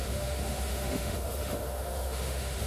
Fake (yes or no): yes